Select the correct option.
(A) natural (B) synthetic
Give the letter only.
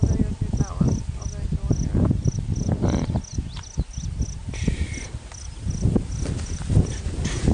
A